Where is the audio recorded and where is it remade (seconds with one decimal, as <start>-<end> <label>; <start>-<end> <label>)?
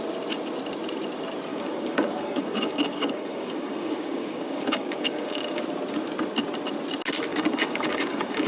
0.0-1.5 recorded; 1.5-5.6 remade; 5.6-7.3 recorded; 7.3-8.5 remade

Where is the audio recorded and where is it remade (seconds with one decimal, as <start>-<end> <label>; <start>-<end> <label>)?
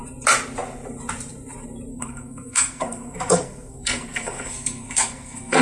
0.0-1.9 recorded; 1.9-5.6 remade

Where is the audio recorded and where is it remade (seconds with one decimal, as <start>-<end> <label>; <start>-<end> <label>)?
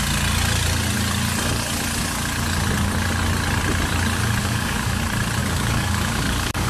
0.0-4.4 recorded; 4.4-5.0 remade; 5.0-5.4 recorded; 5.4-6.7 remade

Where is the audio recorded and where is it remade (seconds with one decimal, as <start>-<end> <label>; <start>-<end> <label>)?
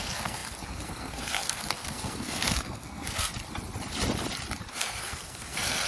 0.0-3.3 remade; 3.3-4.7 recorded; 4.7-5.9 remade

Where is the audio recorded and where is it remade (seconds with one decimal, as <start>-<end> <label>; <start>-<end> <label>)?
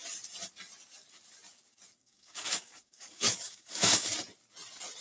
0.0-2.0 recorded; 2.0-4.1 remade; 4.1-5.0 recorded